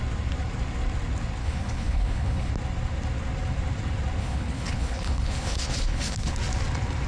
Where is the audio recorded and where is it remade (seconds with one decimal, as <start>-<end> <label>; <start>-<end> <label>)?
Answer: 0.0-1.4 recorded; 1.4-2.5 remade; 2.5-4.2 recorded; 4.2-6.3 remade; 6.3-7.1 recorded